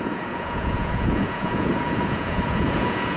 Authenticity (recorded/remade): remade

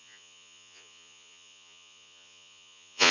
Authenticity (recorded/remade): remade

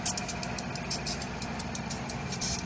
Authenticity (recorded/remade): recorded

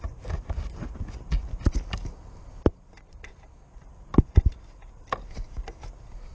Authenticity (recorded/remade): recorded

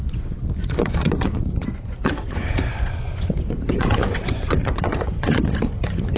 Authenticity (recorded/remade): remade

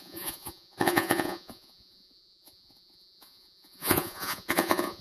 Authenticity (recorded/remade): remade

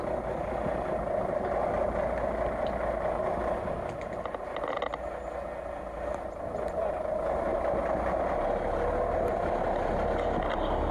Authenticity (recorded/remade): recorded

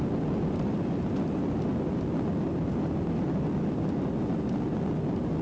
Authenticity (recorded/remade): recorded